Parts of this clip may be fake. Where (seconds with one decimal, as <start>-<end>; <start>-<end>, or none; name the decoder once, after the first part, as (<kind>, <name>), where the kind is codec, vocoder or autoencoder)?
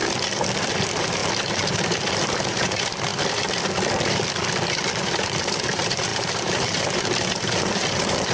0.7-1.2 (vocoder, BigVGAN v2); 1.7-3.1; 5.0-8.3